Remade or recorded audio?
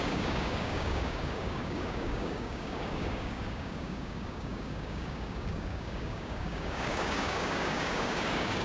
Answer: remade